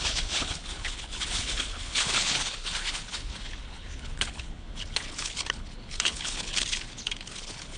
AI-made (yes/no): yes